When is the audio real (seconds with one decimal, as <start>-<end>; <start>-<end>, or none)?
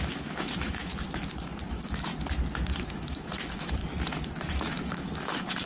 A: 0.9-1.7; 2.1-2.8; 3.8-4.5